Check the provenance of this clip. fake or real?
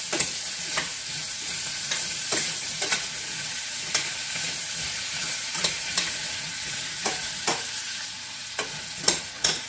fake